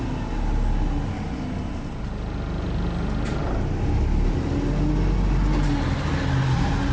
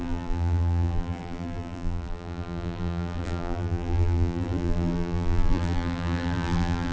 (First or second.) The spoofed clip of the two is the second